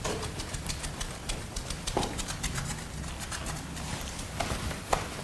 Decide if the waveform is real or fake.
real